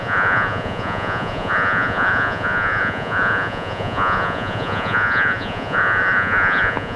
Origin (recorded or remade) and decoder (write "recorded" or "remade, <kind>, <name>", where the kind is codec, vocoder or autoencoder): remade, vocoder, Vocos